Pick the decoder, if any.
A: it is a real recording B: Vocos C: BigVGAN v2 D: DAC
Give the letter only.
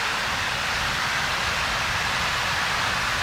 A